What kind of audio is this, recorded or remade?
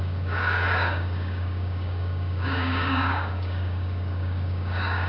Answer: remade